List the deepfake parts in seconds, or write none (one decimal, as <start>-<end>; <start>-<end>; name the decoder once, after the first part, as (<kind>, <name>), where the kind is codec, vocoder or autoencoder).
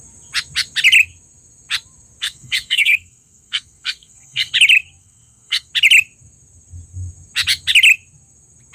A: 2.2-4.5 (codec, SNAC); 5.0-5.7